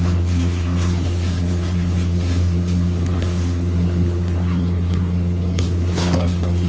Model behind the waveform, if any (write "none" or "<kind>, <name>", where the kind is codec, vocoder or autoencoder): codec, SNAC